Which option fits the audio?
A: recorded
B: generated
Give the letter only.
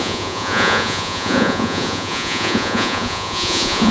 B